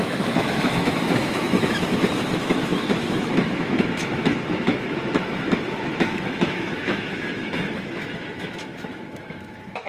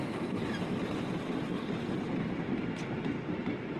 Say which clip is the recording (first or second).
second